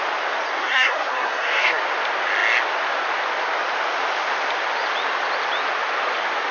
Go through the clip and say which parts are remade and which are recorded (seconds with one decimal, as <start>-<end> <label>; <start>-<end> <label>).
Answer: 0.0-0.6 recorded; 0.6-1.8 remade; 1.8-6.5 recorded